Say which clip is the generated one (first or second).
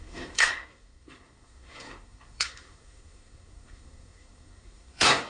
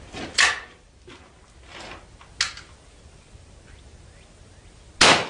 first